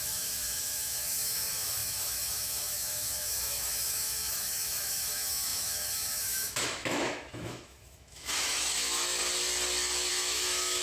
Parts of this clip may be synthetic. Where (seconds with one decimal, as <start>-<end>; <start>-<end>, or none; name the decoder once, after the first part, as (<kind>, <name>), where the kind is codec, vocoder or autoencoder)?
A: 0.0-9.2 (autoencoder, DAC-VAE); 10.1-10.8